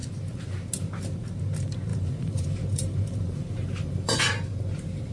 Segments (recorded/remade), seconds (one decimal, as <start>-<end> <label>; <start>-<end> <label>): 0.0-1.9 recorded; 1.9-4.2 remade; 4.2-5.1 recorded